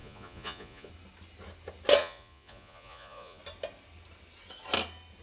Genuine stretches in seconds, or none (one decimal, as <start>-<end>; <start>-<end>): 0.9-2.0; 3.4-5.2